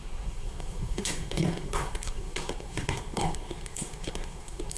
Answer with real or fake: fake